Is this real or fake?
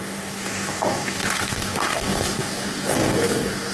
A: fake